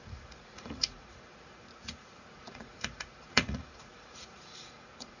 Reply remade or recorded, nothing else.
remade